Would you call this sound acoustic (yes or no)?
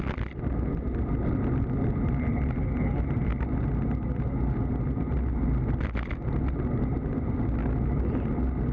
yes